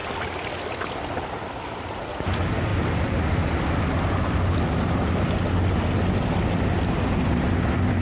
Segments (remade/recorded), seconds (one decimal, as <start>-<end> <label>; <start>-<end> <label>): 0.0-2.7 recorded; 2.7-5.3 remade; 5.3-8.0 recorded

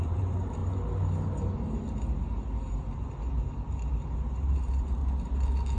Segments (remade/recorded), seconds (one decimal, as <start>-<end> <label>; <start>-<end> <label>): 0.0-0.6 remade; 0.6-3.9 recorded; 3.9-5.0 remade; 5.0-5.8 recorded